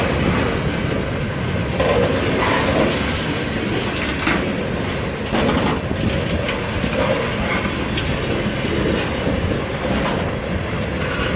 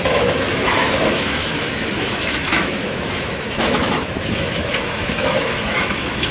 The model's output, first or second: second